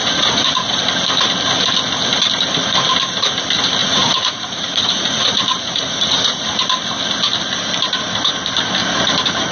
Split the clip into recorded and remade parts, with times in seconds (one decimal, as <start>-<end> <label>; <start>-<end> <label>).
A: 0.0-0.8 remade; 0.8-3.8 recorded; 3.8-6.4 remade; 6.4-9.5 recorded